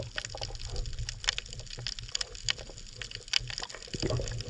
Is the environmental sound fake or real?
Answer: real